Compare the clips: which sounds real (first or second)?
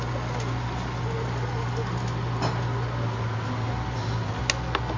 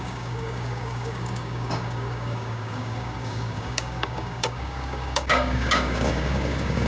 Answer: first